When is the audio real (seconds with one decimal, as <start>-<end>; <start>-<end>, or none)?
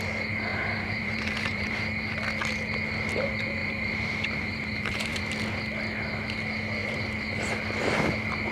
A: 0.0-0.5; 1.7-3.6; 5.2-6.8; 7.5-8.5